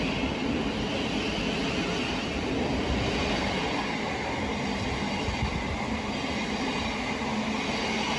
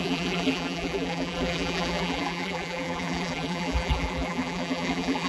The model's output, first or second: second